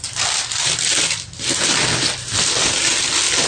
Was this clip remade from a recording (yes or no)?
no